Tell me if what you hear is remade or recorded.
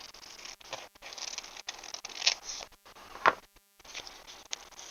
recorded